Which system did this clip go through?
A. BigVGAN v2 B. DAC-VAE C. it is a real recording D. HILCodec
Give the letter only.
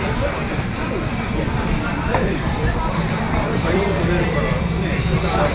A